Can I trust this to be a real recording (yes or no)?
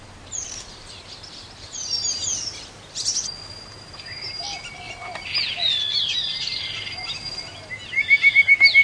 yes